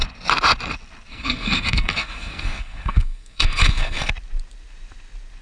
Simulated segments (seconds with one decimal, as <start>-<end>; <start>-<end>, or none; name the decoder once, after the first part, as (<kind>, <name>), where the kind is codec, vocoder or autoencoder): 1.1-4.1 (codec, SNAC)